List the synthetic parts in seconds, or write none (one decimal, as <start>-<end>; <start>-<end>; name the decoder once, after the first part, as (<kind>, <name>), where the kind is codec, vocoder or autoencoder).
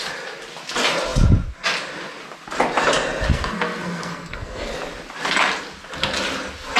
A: 3.3-4.7 (codec, SNAC)